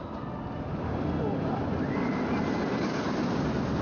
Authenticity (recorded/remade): recorded